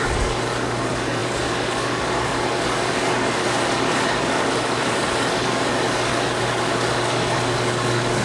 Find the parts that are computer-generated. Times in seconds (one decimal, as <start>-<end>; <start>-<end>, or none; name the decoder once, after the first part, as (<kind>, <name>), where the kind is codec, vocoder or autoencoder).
0.0-8.2 (codec, DAC)